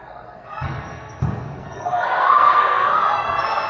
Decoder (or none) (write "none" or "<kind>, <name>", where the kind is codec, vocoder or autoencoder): codec, SNAC